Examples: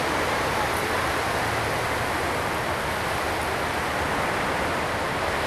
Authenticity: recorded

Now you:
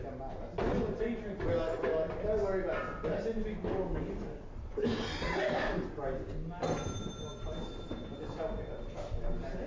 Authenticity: recorded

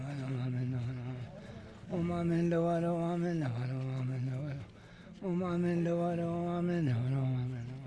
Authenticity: recorded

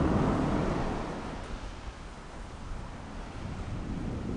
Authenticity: recorded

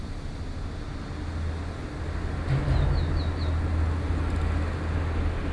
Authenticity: recorded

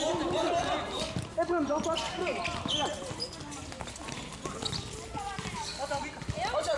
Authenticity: recorded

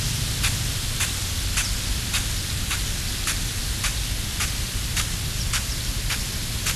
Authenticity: recorded